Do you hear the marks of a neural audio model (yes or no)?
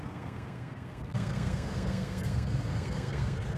yes